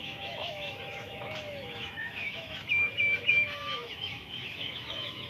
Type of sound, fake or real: fake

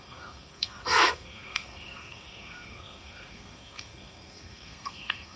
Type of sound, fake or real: fake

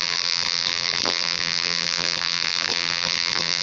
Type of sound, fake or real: fake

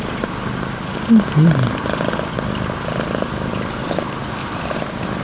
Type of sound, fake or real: real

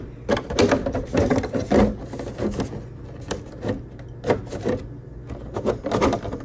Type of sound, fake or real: real